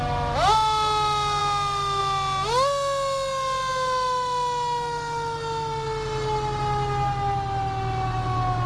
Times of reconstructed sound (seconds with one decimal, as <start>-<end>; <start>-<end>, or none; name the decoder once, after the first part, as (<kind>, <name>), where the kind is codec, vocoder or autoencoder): none